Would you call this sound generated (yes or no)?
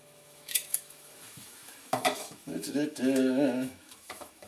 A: yes